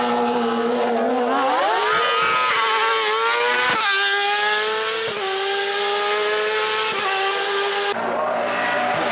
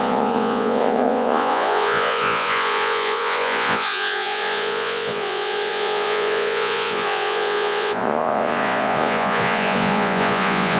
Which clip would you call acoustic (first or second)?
first